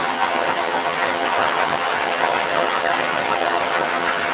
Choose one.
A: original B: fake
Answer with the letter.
B